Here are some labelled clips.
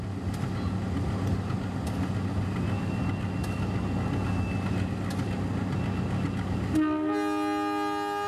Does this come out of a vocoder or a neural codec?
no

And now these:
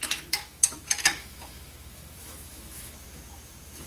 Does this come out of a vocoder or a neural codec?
yes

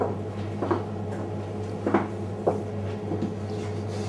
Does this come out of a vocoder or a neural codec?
no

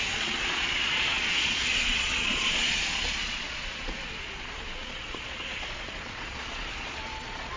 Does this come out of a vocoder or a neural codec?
yes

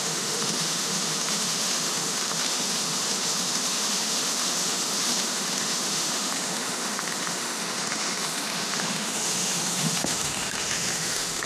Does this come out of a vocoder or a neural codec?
yes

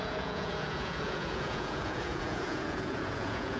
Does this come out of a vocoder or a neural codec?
yes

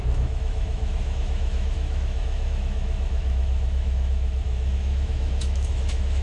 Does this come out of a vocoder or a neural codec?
yes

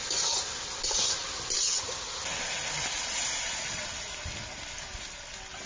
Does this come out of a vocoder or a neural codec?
no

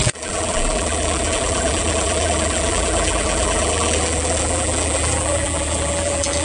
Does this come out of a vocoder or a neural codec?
yes